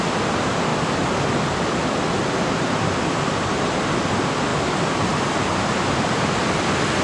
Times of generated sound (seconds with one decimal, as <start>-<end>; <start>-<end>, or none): none